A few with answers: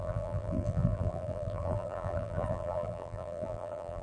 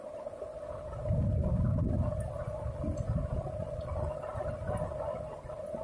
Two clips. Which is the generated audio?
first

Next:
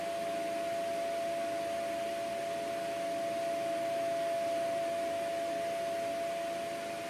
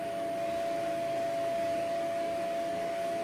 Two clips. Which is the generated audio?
second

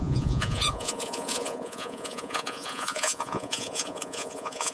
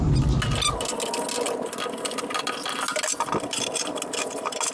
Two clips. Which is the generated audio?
first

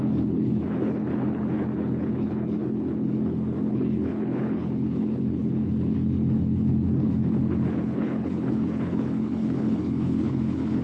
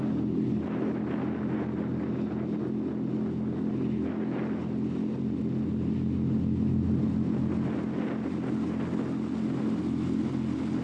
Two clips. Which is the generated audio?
first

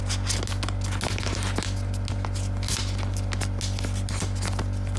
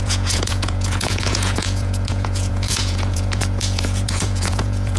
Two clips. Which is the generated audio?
second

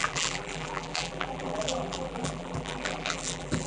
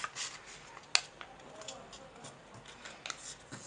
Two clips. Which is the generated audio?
first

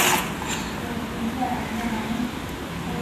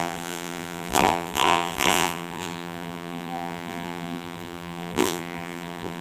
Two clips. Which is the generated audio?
second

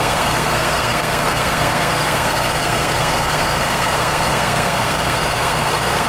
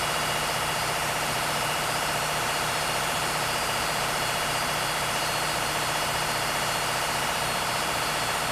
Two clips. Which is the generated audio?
first